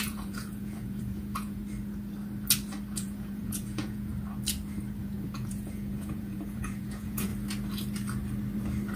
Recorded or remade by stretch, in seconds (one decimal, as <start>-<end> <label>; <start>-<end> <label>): 0.0-1.6 remade; 1.6-2.9 recorded; 2.9-4.1 remade; 4.1-5.0 recorded; 5.0-7.3 remade; 7.3-9.0 recorded